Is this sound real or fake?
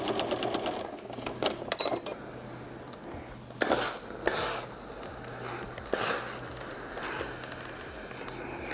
real